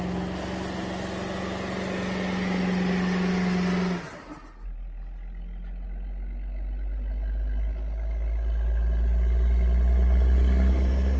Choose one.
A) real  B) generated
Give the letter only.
A